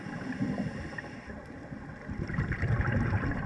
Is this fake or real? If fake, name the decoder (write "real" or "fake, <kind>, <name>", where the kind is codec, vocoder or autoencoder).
fake, vocoder, BigVGAN v2